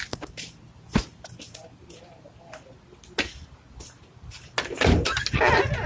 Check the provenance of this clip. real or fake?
real